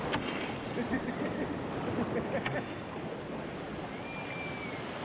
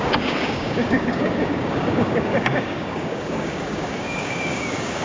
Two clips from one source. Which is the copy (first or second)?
second